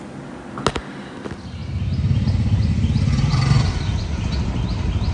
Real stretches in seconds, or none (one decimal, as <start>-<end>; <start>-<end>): 0.0-5.1

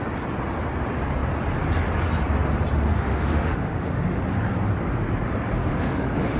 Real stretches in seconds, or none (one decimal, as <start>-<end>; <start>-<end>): 0.0-2.9; 4.2-5.6

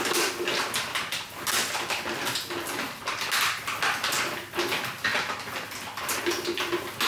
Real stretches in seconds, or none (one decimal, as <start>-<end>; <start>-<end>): 0.0-7.1

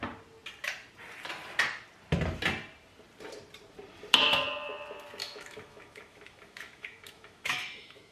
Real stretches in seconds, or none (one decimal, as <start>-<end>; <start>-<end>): 0.0-5.2

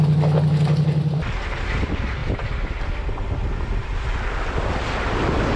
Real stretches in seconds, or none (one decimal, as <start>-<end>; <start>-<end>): 0.0-5.6